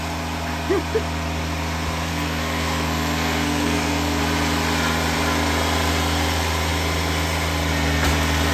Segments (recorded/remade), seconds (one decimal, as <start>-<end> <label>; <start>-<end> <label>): 0.0-2.1 recorded; 2.1-4.2 remade; 4.2-8.5 recorded